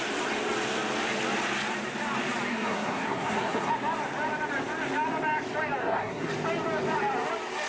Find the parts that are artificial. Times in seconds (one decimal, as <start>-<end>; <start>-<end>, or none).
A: 2.5-3.7; 5.8-6.3

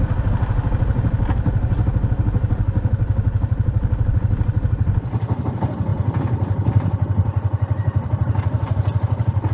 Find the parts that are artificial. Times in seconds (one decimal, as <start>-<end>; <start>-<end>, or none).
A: 5.9-9.5